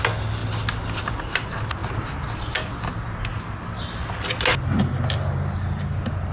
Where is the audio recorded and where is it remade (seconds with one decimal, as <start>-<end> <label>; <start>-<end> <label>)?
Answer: 0.0-6.3 recorded